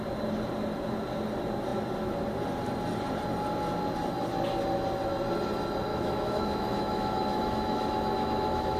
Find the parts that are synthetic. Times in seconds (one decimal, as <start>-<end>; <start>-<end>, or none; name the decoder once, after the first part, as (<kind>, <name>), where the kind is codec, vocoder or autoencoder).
5.9-8.8 (autoencoder, DAC-VAE)